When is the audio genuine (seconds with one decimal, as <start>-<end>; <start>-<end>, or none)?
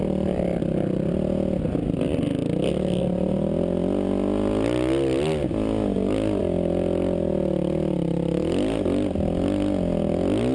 0.0-10.5